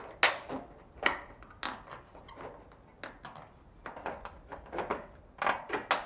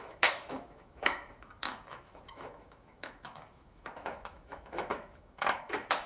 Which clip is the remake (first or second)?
second